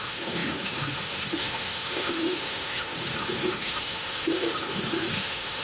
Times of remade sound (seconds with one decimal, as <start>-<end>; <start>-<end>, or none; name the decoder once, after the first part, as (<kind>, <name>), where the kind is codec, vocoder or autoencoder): 0.0-5.6 (autoencoder, DAC-VAE)